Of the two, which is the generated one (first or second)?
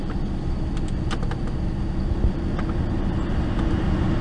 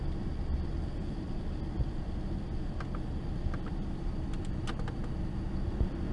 second